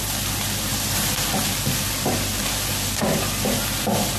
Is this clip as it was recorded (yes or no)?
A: yes